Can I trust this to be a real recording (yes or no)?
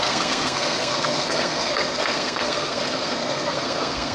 no